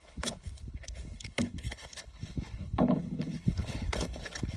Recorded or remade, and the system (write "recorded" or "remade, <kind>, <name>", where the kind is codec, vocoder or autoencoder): remade, codec, HILCodec